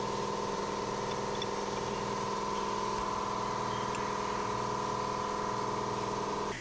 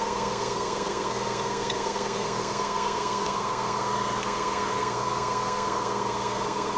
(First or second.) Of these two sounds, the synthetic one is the second